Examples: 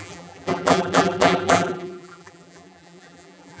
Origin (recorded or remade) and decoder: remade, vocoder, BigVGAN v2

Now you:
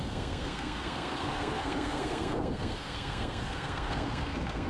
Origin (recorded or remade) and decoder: remade, codec, SNAC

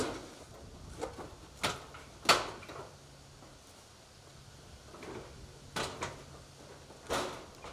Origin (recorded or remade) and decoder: recorded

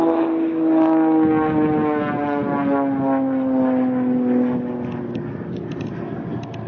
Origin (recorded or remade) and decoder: recorded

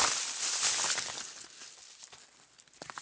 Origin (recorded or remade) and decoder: recorded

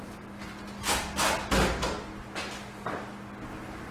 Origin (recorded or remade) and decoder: recorded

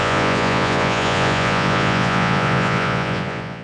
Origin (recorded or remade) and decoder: remade, vocoder, Vocos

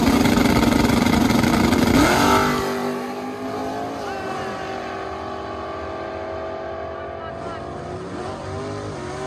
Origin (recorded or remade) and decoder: recorded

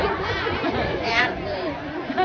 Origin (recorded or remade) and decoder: remade, vocoder, Vocos